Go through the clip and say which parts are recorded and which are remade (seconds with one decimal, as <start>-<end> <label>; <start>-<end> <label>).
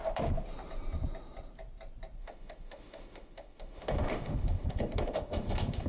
0.0-2.2 recorded; 2.2-5.9 remade